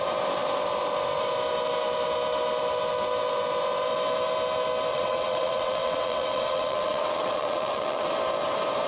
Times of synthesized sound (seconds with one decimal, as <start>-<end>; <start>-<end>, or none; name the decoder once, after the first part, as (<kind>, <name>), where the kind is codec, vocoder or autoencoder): 4.9-8.1 (vocoder, WaveNeXt)